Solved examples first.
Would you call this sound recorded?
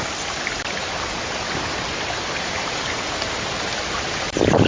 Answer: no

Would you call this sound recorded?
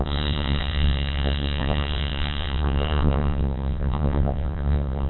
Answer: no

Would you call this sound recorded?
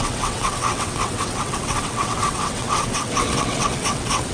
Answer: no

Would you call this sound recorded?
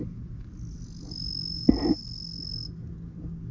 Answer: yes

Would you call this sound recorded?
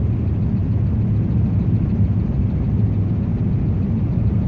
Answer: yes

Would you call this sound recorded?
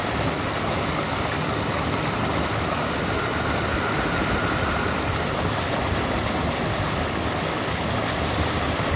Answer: yes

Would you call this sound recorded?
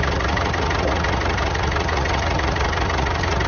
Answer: no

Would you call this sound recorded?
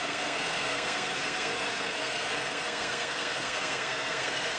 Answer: no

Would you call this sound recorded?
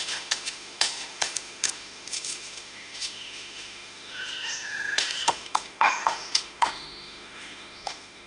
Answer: no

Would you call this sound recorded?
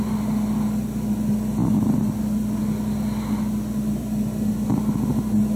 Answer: yes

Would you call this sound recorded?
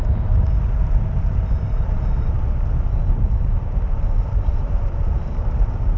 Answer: no